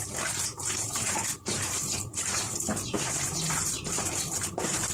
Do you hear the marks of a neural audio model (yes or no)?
yes